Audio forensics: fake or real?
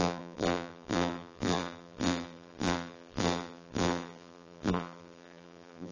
fake